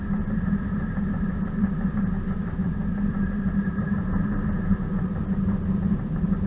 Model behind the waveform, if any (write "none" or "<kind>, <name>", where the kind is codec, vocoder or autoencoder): vocoder, BigVGAN v2